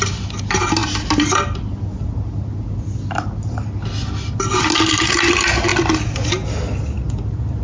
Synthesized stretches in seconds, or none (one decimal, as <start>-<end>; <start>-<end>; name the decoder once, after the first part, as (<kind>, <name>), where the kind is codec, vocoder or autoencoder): none